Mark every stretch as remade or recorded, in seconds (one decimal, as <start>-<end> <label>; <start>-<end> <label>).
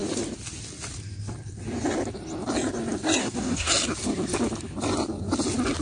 0.0-3.2 recorded; 3.2-3.7 remade; 3.7-5.8 recorded